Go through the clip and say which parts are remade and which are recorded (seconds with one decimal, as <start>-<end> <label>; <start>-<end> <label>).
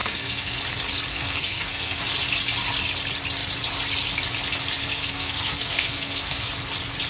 0.0-0.6 remade; 0.6-1.1 recorded; 1.1-2.0 remade; 2.0-4.8 recorded; 4.8-6.5 remade; 6.5-7.1 recorded